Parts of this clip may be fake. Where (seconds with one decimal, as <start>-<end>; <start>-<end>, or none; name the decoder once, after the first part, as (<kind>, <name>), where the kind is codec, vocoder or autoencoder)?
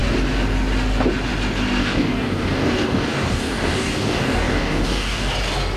1.8-5.3 (codec, DAC)